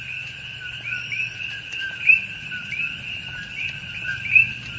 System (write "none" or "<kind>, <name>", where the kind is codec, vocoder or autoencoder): none